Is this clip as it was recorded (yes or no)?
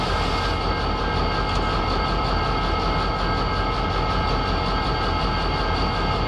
yes